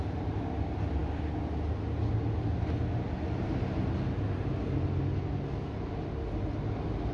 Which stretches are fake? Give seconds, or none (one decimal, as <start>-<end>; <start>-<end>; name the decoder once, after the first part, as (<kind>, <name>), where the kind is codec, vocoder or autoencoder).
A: none